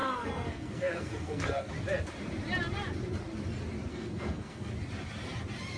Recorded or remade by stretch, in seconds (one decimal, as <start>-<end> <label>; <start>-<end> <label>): 0.0-1.7 remade; 1.7-3.9 recorded; 3.9-4.7 remade; 4.7-5.8 recorded